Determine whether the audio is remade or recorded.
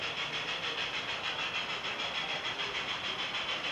remade